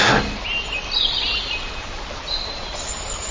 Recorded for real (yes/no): yes